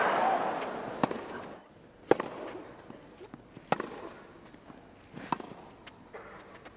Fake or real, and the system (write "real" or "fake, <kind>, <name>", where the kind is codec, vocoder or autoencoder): real